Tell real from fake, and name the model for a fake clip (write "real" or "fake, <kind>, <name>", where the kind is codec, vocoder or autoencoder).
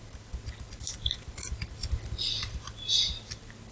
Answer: real